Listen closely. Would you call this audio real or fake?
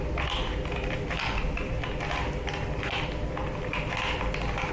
real